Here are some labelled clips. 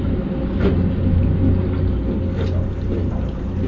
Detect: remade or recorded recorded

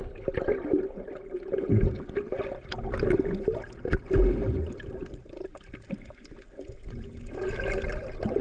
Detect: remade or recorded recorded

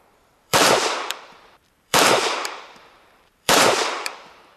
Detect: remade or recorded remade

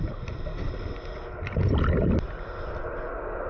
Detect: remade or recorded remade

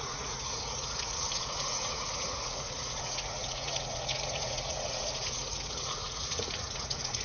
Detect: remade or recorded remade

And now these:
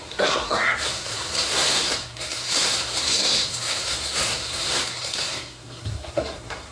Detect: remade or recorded remade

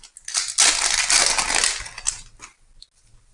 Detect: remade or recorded recorded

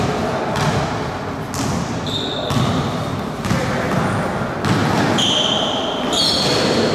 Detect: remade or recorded recorded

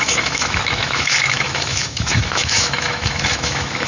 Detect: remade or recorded remade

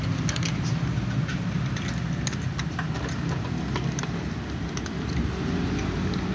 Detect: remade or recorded recorded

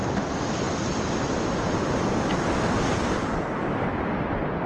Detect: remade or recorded recorded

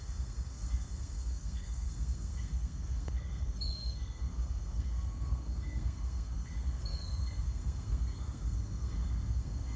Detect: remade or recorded remade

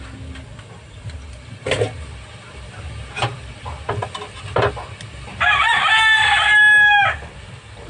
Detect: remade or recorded recorded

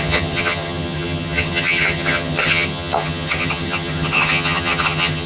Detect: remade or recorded remade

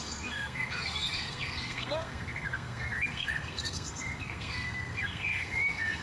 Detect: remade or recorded remade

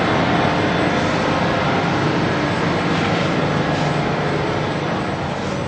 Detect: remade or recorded recorded